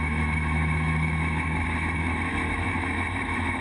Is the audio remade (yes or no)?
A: yes